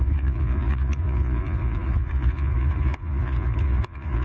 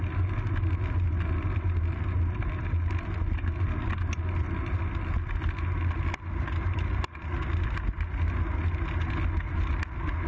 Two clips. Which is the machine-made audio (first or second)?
first